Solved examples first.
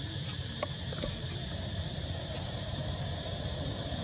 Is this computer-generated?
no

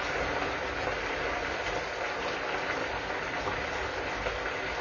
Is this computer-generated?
no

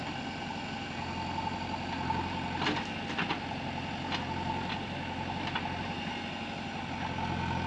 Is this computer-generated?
no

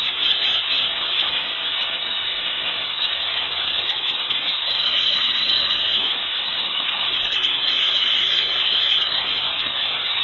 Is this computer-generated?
yes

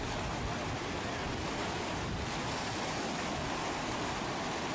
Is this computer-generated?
no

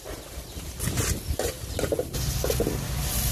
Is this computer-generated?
no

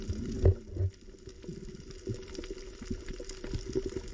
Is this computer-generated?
no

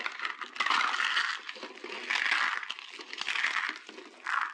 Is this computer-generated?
no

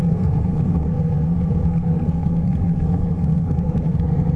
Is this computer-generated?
yes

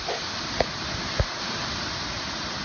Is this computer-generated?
no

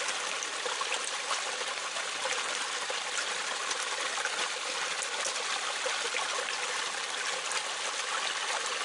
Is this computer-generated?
no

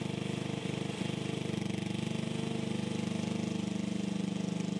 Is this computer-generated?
no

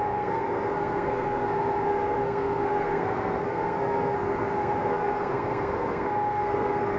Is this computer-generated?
yes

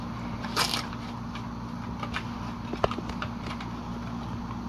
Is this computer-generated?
no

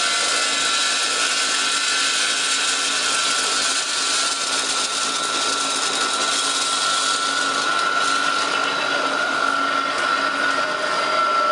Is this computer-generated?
no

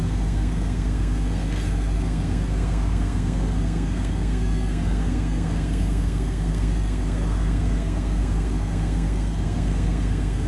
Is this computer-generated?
yes